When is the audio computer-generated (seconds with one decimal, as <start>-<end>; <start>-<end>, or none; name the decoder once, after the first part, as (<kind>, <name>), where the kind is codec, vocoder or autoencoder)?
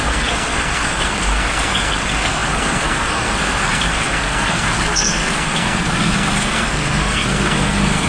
0.0-8.1 (codec, SNAC)